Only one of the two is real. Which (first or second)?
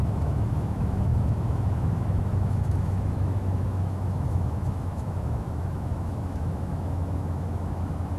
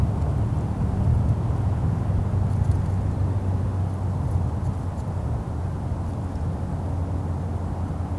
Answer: second